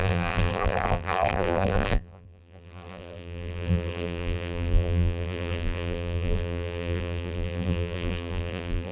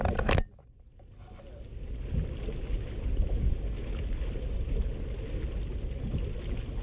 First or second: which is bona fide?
second